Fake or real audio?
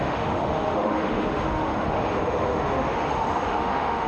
fake